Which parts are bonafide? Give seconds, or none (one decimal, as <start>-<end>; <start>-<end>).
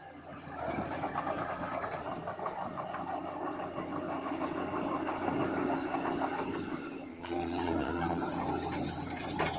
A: 0.0-7.1; 8.2-9.6